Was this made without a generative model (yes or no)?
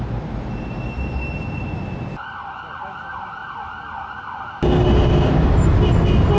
yes